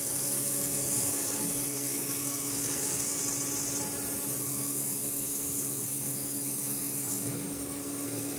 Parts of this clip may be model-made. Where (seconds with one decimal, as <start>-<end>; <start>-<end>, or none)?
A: 0.0-3.2; 4.4-8.4